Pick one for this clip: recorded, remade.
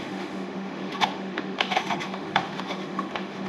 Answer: remade